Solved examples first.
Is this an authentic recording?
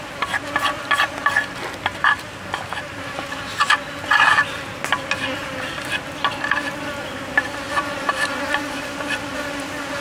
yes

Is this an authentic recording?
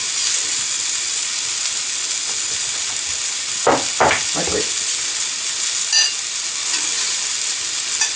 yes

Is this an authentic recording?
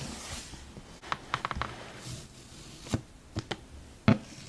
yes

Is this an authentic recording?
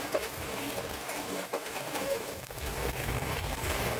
no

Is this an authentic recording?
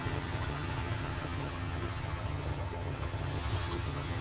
no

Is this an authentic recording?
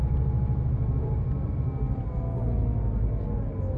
yes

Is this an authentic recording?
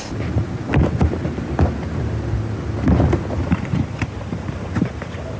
yes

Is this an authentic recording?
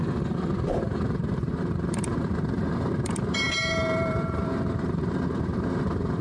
no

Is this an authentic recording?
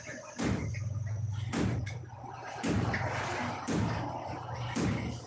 yes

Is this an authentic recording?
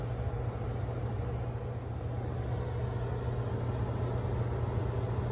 yes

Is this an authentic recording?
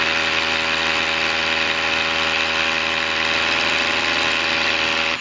yes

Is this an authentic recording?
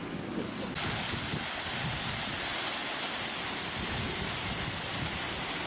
yes